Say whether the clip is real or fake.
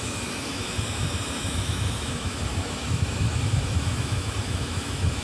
fake